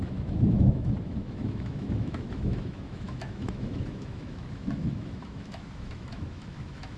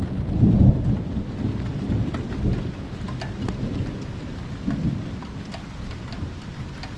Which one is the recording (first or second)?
second